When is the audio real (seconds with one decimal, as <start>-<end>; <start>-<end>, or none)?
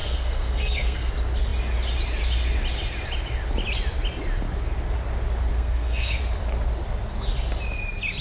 1.1-5.5; 6.2-8.2